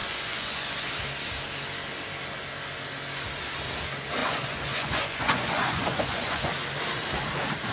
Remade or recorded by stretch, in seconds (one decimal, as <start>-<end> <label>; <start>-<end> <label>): 0.0-0.9 remade; 0.9-4.2 recorded; 4.2-6.5 remade; 6.5-7.7 recorded

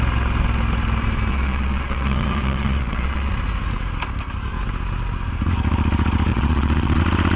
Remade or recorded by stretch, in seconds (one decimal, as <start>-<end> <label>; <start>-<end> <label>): 0.0-1.3 recorded; 1.3-3.3 remade; 3.3-6.3 recorded; 6.3-7.0 remade; 7.0-7.4 recorded

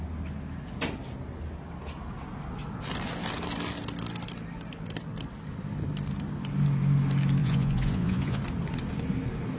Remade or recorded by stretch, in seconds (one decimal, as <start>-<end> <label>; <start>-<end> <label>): 0.0-7.4 recorded; 7.4-8.4 remade; 8.4-9.6 recorded

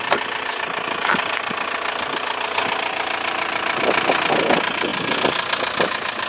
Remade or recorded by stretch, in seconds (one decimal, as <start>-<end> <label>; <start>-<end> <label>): 0.0-6.3 recorded